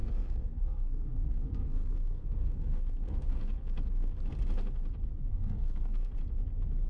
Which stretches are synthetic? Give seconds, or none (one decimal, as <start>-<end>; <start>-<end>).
0.0-4.1; 5.3-6.1